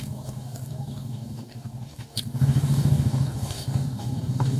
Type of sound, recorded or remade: remade